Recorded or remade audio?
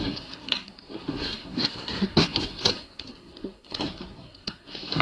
remade